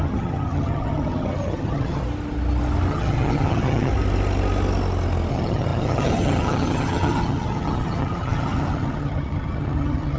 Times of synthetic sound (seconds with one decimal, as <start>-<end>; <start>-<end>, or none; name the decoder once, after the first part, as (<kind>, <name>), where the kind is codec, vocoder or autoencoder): 0.0-2.0 (vocoder, HiFi-GAN); 2.9-3.9; 5.3-10.2

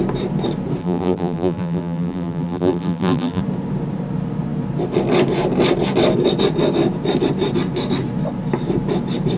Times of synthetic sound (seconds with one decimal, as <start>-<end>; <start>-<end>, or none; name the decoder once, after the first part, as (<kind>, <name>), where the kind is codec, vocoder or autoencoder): 0.8-3.4 (vocoder, BigVGAN v2)

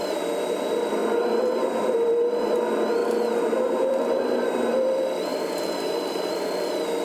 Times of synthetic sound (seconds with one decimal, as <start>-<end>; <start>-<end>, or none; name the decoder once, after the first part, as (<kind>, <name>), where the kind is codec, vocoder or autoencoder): 0.0-7.0 (vocoder, BigVGAN v2)

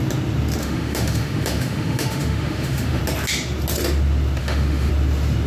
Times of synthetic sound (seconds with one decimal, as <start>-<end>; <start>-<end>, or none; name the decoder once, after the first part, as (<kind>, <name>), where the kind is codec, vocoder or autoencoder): 0.6-3.0 (autoencoder, DAC-VAE); 4.4-4.9

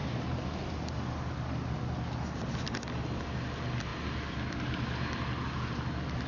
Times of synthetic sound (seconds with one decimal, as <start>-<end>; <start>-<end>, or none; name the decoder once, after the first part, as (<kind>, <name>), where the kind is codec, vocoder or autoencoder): none

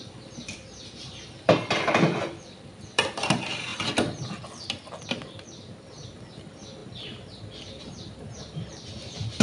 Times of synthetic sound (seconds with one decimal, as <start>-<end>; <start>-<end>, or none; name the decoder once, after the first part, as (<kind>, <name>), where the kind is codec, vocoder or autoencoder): 0.0-3.7 (vocoder, BigVGAN v2); 5.3-9.4

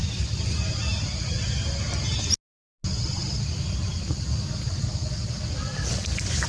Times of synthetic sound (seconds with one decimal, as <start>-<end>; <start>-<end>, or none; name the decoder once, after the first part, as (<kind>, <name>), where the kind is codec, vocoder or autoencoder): none

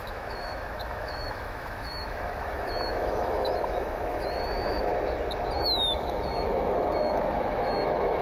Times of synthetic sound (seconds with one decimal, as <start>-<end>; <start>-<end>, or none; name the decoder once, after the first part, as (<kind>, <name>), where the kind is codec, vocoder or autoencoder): 0.0-4.9 (autoencoder, DAC-VAE); 5.6-8.2